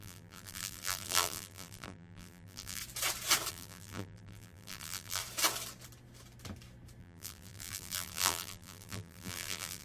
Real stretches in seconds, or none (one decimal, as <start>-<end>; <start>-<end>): 2.8-3.5; 5.2-7.0